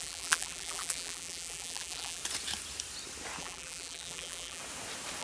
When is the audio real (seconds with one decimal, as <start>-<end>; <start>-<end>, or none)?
2.2-3.4; 4.6-5.2